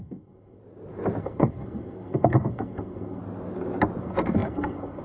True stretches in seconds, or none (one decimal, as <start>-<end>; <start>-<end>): 0.6-1.2; 3.2-4.0